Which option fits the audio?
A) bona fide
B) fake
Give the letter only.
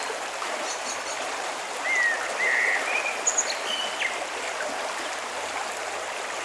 A